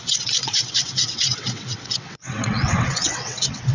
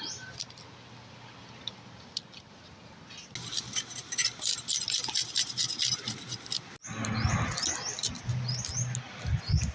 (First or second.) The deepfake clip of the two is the first